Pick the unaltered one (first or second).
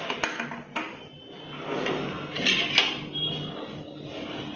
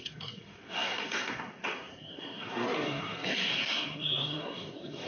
first